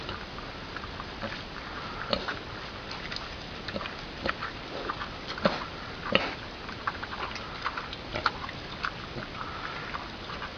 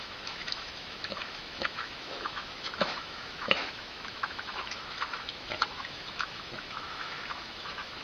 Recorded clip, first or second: first